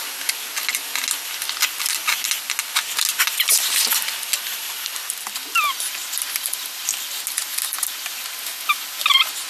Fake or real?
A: real